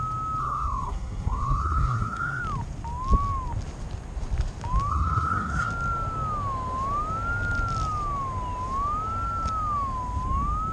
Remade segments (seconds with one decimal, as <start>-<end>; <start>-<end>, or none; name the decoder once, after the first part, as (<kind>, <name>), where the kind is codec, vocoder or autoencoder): 0.4-2.4 (codec, SNAC); 4.9-5.7